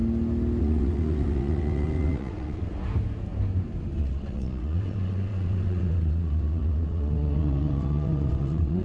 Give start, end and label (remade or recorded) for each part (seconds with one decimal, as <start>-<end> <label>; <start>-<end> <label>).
0.0-0.6 recorded; 0.6-2.7 remade; 2.7-4.0 recorded; 4.0-8.8 remade